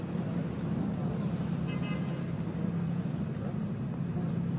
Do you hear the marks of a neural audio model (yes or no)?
no